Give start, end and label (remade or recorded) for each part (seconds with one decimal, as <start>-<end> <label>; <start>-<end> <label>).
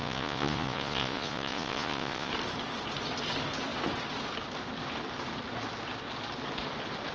0.0-2.3 remade; 2.3-7.1 recorded